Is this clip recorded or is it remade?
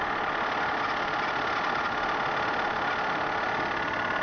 recorded